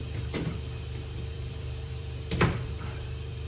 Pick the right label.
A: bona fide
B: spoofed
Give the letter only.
B